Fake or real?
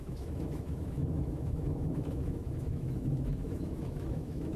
fake